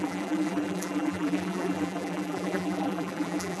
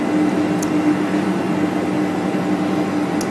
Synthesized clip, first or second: first